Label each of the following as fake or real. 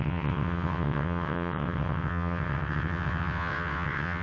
fake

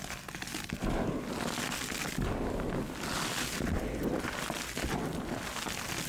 real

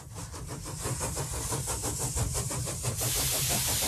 fake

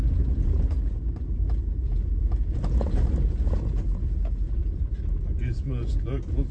real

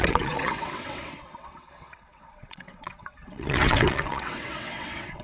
fake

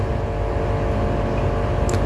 real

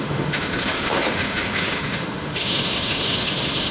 fake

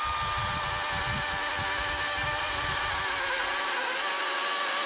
real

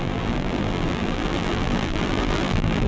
fake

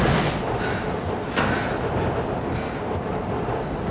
real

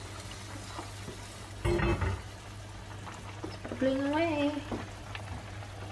real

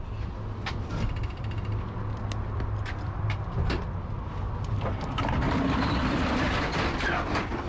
real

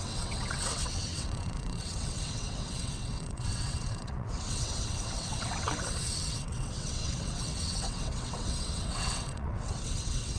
fake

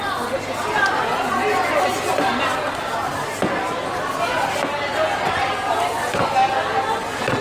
real